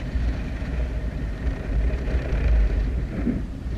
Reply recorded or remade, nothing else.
remade